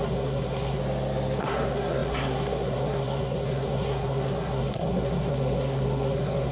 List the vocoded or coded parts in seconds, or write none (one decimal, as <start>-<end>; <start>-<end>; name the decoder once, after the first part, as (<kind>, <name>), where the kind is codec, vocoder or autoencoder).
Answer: 0.0-0.8 (codec, SNAC); 1.4-6.5